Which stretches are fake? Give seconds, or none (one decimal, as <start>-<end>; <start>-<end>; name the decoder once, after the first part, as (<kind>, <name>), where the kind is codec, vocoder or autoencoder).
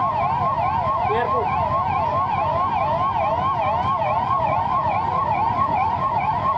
4.0-6.6 (vocoder, Vocos)